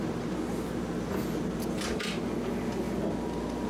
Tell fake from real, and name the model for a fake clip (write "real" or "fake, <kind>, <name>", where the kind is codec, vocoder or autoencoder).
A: real